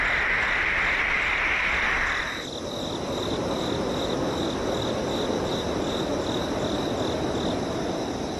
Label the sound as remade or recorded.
recorded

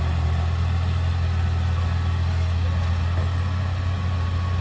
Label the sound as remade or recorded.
recorded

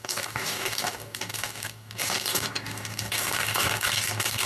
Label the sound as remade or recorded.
remade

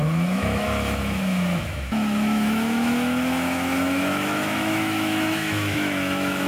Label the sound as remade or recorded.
remade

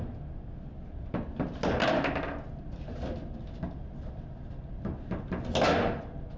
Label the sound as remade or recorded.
recorded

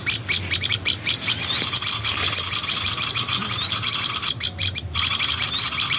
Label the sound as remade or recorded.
recorded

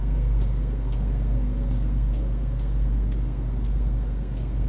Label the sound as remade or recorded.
remade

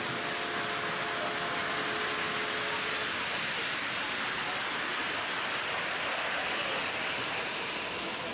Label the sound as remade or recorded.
recorded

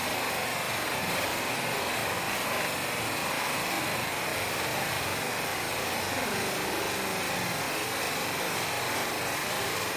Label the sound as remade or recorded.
recorded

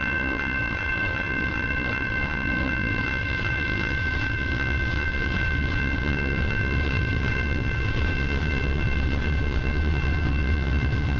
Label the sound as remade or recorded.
remade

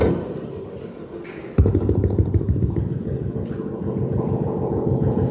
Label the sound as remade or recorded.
recorded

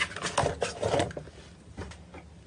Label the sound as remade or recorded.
recorded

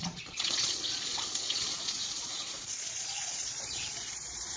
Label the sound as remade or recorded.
remade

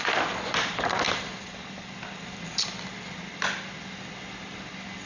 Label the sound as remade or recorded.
recorded